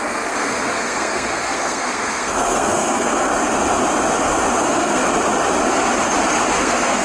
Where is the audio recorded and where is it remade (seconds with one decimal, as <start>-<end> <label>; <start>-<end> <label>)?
0.0-3.3 remade; 3.3-4.6 recorded; 4.6-5.0 remade; 5.0-6.6 recorded; 6.6-7.0 remade